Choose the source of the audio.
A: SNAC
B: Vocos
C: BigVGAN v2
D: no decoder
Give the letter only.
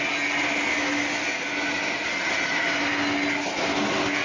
D